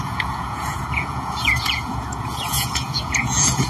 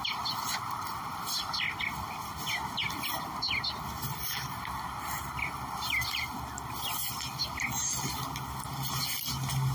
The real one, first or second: second